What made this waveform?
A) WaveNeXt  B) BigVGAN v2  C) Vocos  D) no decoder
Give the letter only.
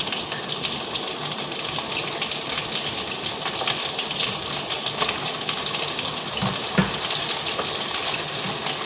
D